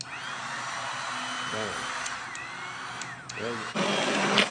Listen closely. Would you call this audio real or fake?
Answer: real